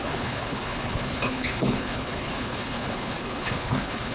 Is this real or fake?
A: fake